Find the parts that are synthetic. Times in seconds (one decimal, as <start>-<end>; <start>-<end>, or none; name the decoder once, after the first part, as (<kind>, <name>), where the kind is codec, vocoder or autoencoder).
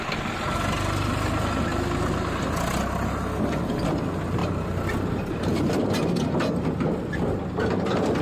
none